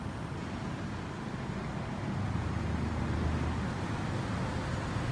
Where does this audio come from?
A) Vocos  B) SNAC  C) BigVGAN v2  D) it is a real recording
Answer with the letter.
D